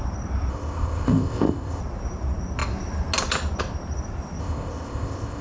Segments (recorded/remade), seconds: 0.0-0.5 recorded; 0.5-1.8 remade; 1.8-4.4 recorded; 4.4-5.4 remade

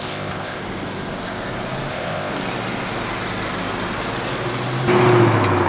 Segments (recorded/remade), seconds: 0.0-0.6 remade; 0.6-1.9 recorded; 1.9-2.3 remade; 2.3-5.7 recorded